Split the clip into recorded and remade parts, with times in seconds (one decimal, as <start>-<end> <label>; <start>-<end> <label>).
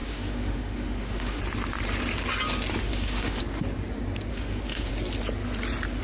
0.0-1.4 remade; 1.4-2.8 recorded; 2.8-3.4 remade; 3.4-4.3 recorded; 4.3-4.9 remade; 4.9-6.0 recorded